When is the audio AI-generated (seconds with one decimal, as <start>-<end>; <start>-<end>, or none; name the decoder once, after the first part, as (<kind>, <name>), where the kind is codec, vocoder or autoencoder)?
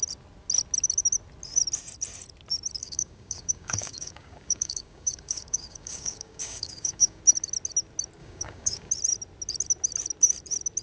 2.8-7.2 (codec, DAC); 8.2-8.9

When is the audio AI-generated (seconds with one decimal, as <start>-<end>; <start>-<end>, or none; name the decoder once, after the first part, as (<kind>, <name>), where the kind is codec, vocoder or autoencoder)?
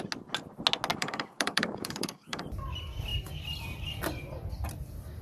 0.9-2.4 (codec, DAC)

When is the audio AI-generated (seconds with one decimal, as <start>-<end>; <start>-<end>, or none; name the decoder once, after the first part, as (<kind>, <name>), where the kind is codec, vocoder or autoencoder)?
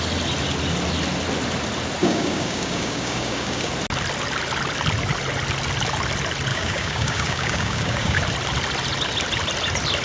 2.0-3.7 (codec, DAC); 6.5-8.2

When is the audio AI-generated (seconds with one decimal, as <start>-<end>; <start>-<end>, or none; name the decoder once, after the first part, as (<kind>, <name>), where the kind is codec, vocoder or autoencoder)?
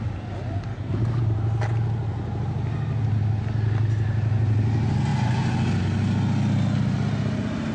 0.7-1.2 (codec, DAC)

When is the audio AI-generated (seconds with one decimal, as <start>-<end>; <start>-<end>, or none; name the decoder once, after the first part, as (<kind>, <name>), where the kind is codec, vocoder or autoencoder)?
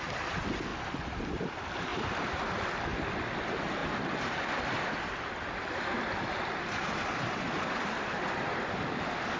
none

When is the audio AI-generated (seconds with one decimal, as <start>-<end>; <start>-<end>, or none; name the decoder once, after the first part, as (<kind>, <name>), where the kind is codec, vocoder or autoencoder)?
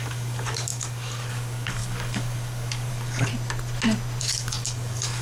0.0-3.3 (codec, DAC); 4.2-5.2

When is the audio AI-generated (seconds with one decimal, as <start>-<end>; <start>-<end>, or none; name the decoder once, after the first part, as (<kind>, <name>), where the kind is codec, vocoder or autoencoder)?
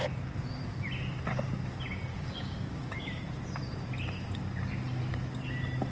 2.1-3.2 (codec, DAC)